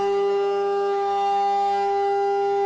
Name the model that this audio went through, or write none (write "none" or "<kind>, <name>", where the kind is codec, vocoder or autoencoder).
autoencoder, DAC-VAE